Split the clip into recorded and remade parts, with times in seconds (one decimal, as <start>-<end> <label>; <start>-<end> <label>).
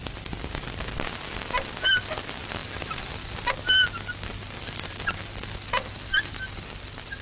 0.0-7.2 recorded